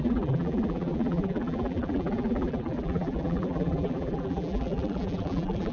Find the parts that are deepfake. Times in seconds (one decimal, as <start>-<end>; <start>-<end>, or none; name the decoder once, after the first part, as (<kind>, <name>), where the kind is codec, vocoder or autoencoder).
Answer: 0.0-5.7 (vocoder, BigVGAN v2)